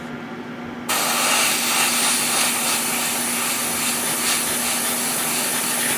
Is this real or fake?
real